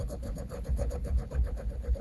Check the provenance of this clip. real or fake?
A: fake